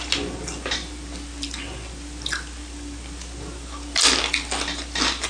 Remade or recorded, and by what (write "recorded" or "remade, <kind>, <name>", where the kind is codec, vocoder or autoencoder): recorded